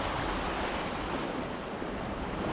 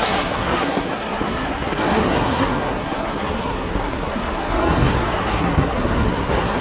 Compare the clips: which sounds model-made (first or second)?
second